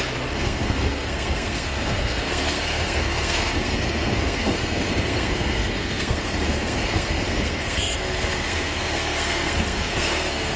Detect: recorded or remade remade